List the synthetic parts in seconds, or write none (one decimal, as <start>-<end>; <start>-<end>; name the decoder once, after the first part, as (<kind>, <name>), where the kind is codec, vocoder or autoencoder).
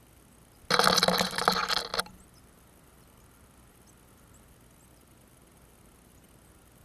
none